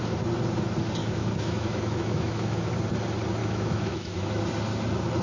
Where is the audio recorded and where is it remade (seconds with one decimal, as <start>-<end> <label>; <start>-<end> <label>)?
0.0-1.0 recorded; 1.0-2.7 remade; 2.7-3.4 recorded; 3.4-4.4 remade; 4.4-5.2 recorded